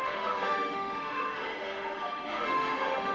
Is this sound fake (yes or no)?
yes